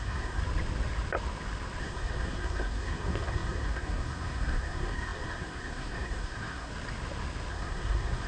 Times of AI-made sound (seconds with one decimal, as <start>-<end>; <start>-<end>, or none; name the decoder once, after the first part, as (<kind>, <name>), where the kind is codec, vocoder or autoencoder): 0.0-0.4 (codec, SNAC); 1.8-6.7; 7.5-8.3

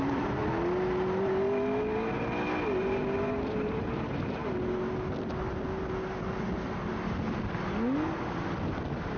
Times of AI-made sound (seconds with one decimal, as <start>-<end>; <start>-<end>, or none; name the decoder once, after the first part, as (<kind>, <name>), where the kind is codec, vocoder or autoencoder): 0.0-0.4 (vocoder, BigVGAN v2); 2.8-4.4

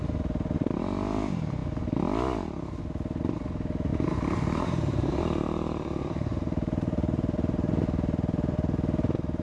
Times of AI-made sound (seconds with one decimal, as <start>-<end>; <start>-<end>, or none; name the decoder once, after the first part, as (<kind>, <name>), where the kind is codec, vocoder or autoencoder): 3.9-5.2 (vocoder, BigVGAN v2); 6.3-7.7

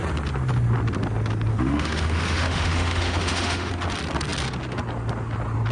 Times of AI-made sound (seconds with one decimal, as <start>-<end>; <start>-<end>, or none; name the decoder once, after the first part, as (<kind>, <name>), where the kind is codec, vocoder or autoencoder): 1.5-3.7 (autoencoder, DAC-VAE)

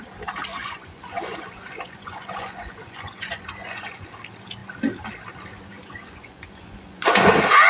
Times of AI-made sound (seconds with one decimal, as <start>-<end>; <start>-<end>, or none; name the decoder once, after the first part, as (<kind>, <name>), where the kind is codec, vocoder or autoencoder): 0.5-4.1 (vocoder, Vocos); 5.5-7.3

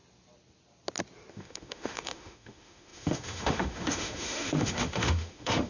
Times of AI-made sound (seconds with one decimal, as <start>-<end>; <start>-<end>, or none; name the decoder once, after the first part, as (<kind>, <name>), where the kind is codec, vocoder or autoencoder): 1.3-5.7 (autoencoder, DAC-VAE)

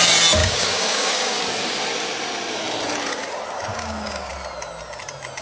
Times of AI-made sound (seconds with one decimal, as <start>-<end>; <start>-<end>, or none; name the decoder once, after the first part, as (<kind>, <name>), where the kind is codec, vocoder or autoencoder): 0.4-1.4 (codec, DAC); 3.7-4.3

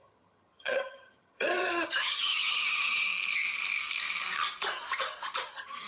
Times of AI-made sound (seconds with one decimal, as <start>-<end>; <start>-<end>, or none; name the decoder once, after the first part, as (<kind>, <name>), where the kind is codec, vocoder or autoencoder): 0.0-3.1 (vocoder, HiFi-GAN); 5.5-5.9